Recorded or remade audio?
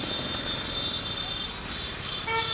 recorded